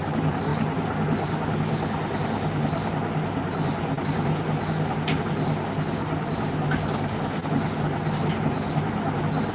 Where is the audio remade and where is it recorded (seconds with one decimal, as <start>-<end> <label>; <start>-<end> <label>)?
0.0-9.5 recorded